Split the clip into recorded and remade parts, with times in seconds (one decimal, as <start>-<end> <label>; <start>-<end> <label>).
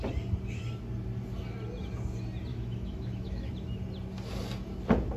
0.0-2.5 recorded; 2.5-3.5 remade; 3.5-5.2 recorded